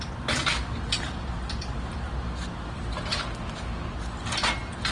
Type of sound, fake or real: real